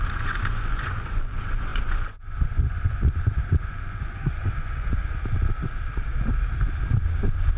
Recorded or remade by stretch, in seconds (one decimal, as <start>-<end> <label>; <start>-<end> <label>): 0.0-5.0 remade; 5.0-7.6 recorded